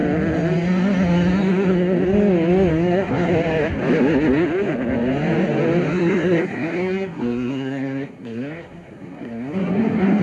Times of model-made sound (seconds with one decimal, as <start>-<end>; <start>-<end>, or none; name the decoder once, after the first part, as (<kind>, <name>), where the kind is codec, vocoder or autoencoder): 2.7-3.3 (codec, SNAC); 5.9-10.2